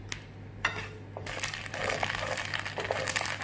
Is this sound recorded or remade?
recorded